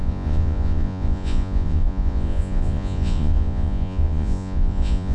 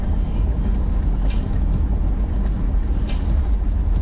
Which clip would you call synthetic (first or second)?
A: first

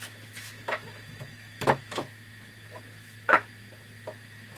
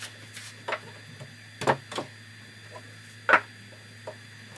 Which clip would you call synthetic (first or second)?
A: first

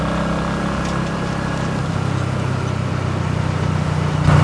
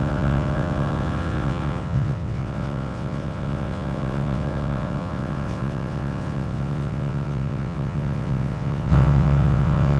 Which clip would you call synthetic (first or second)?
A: second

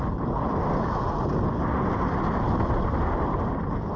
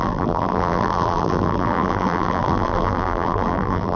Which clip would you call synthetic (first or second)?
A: second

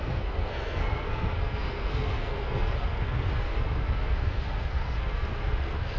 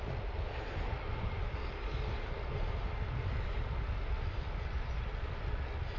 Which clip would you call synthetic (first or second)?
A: first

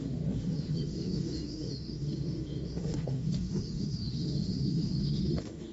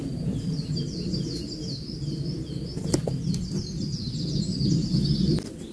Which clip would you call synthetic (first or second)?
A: first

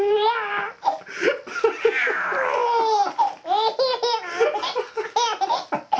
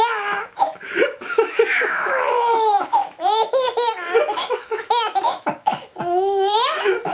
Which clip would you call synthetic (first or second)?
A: second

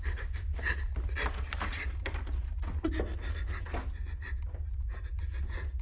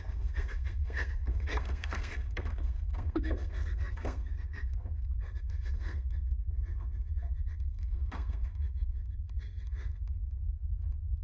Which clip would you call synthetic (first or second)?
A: second